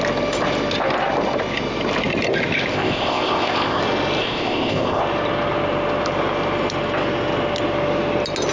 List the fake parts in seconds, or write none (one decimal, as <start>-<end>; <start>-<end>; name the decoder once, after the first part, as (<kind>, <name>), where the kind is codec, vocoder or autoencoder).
2.7-3.8 (codec, ZipCodec); 4.2-5.0